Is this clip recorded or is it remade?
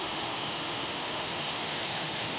remade